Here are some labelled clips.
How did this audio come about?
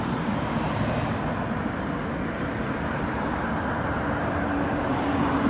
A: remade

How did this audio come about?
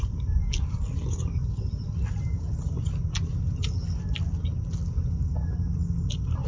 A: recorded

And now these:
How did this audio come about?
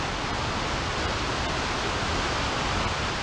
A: recorded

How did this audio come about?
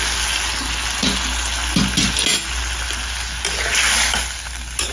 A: recorded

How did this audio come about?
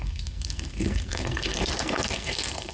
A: remade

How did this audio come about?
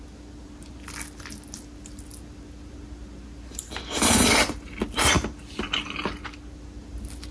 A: recorded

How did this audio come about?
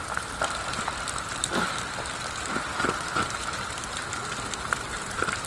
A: recorded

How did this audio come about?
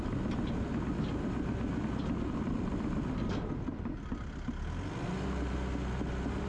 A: recorded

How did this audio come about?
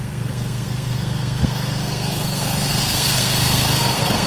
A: remade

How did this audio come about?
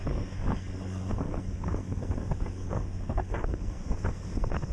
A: remade